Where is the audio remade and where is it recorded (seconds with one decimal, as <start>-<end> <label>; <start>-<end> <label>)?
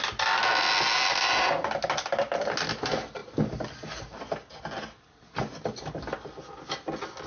0.0-7.3 recorded